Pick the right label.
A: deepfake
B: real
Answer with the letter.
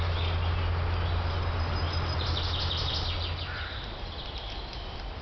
B